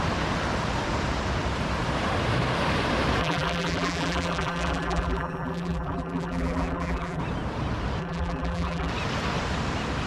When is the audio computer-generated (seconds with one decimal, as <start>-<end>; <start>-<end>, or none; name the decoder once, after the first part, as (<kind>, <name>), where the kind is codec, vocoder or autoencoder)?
3.2-7.2 (vocoder, BigVGAN v2); 8.0-8.9

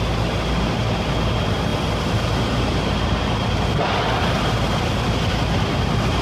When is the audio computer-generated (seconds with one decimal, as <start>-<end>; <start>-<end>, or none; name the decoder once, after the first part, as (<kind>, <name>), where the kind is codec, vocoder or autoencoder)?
none

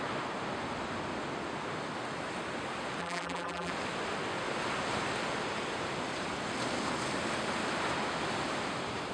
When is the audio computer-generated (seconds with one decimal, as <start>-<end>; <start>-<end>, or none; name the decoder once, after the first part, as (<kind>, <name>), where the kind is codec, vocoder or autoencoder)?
3.0-3.7 (vocoder, BigVGAN v2)

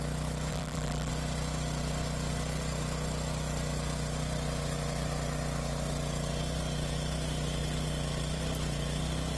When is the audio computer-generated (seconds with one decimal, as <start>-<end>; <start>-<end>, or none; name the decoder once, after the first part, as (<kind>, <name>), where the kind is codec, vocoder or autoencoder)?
0.5-1.1 (vocoder, BigVGAN v2)

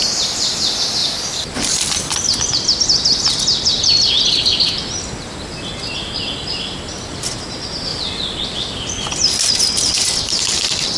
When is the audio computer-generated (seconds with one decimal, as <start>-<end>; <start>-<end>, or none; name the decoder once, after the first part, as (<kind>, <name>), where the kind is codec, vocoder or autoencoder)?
1.0-4.1 (vocoder, BigVGAN v2); 7.9-10.2

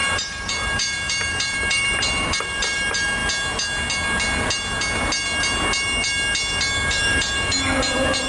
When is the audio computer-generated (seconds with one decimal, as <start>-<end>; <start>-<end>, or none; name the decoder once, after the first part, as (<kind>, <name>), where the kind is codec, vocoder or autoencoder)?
0.0-3.2 (vocoder, BigVGAN v2); 6.6-8.3

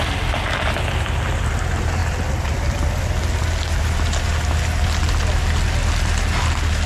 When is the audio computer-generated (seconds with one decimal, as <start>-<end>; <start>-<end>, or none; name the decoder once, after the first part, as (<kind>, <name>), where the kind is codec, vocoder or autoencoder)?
none